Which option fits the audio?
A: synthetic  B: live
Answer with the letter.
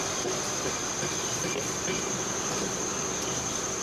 B